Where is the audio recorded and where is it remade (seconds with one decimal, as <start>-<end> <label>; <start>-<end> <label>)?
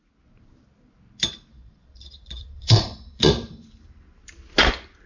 0.0-1.5 recorded; 1.5-3.3 remade; 3.3-5.1 recorded